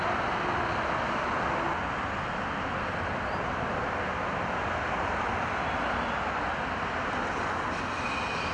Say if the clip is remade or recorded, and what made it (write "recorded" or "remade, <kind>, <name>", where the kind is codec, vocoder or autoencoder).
recorded